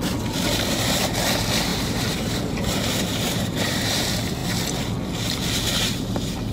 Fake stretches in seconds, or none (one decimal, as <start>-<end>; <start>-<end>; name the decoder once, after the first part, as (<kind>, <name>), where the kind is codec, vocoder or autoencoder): 1.7-2.5 (vocoder, BigVGAN v2); 3.1-3.9